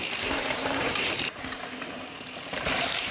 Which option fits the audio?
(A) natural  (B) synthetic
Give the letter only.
B